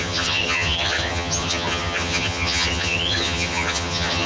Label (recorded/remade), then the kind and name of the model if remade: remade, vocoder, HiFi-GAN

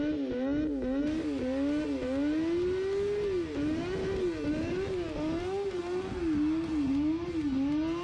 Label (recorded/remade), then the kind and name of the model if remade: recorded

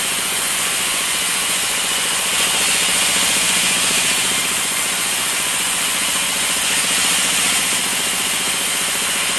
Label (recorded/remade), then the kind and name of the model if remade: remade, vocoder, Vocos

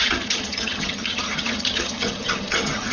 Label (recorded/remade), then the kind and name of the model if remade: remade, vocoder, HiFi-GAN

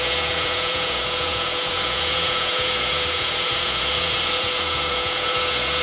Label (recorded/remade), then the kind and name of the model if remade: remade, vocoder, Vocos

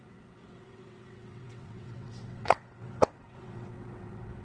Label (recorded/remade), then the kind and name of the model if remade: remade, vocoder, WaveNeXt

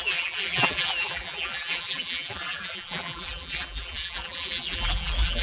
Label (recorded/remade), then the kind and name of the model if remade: remade, vocoder, BigVGAN v2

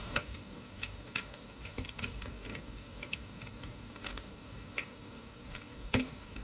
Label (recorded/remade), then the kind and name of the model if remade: remade, codec, DAC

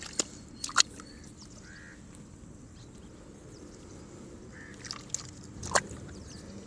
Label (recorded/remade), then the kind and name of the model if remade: recorded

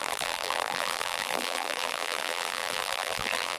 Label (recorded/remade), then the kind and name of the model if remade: remade, vocoder, BigVGAN v2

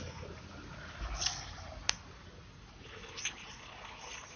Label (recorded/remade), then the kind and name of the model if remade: recorded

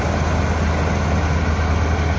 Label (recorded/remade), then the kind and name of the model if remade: recorded